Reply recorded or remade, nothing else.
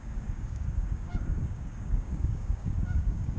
remade